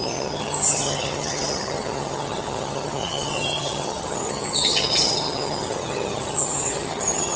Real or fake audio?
fake